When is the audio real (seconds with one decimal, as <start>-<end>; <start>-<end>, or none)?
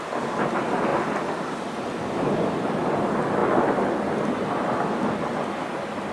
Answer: 0.0-6.1